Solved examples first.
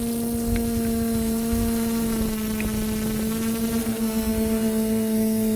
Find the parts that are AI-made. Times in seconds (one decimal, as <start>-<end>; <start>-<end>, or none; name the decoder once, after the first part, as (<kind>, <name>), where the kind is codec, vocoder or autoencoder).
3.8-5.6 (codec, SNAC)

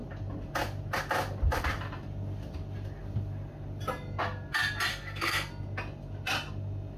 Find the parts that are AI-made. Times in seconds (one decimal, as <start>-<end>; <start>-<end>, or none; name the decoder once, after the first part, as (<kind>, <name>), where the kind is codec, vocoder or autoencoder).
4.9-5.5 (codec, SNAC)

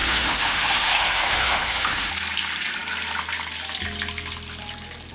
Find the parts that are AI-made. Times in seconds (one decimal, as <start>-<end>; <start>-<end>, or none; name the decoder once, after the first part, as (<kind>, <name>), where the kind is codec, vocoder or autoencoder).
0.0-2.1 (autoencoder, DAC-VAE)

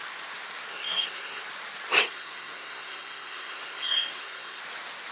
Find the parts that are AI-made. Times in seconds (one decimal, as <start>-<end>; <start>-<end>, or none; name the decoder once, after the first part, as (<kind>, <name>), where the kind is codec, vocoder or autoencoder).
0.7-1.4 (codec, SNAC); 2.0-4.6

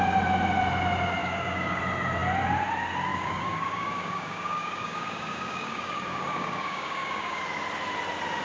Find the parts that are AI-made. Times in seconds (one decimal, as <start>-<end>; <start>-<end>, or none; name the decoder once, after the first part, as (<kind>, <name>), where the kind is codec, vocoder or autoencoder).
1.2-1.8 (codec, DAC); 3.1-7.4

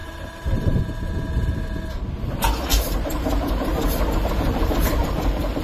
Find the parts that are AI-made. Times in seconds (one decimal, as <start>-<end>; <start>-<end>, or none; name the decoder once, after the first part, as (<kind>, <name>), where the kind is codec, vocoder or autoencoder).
0.0-0.8 (vocoder, BigVGAN v2); 2.7-5.6

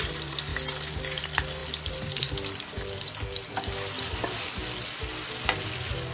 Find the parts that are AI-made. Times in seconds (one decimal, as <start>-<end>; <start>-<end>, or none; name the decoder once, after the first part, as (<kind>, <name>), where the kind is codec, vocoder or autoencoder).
none